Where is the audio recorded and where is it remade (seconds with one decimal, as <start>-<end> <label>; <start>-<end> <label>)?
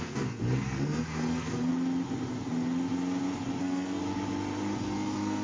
0.0-1.7 remade; 1.7-3.6 recorded; 3.6-4.0 remade; 4.0-4.8 recorded; 4.8-5.4 remade